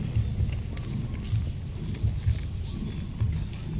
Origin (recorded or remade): recorded